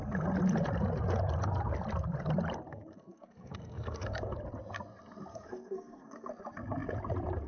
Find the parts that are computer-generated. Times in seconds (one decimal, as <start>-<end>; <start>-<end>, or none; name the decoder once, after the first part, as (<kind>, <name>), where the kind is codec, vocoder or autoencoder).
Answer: 2.7-4.2 (codec, SNAC); 5.3-6.3